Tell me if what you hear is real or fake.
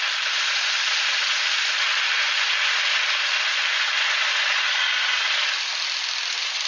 real